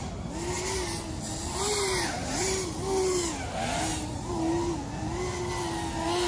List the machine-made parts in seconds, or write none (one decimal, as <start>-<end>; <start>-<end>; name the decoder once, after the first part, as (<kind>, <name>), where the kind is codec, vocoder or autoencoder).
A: 1.4-2.2 (vocoder, BigVGAN v2); 3.9-4.5